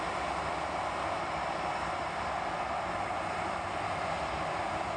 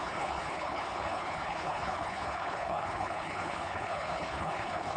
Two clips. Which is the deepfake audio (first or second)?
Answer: second